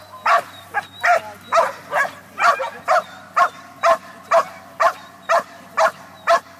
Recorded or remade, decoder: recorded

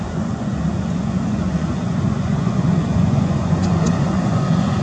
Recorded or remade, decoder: remade, vocoder, Vocos